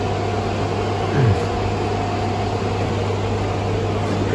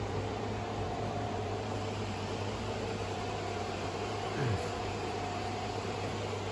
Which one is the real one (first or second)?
first